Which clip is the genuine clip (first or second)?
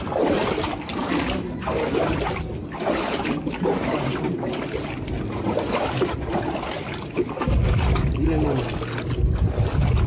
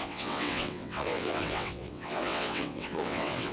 first